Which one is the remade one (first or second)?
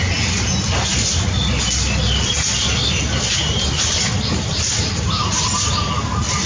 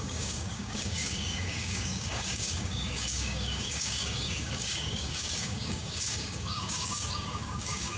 second